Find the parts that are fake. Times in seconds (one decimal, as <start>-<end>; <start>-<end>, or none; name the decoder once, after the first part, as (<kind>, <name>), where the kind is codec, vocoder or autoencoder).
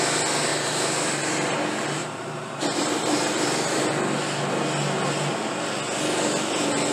0.5-1.2 (vocoder, BigVGAN v2); 2.0-3.8